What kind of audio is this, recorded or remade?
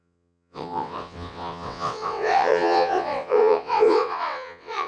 remade